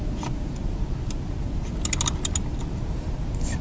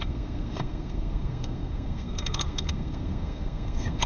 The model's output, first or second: second